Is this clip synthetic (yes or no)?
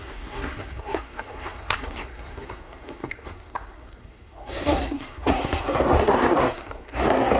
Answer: yes